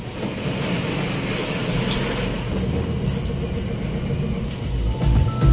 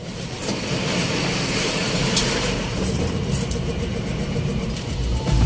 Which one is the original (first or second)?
first